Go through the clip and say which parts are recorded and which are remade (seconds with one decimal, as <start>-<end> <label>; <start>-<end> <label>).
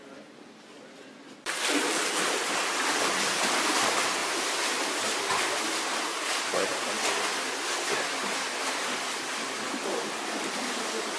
0.0-11.2 recorded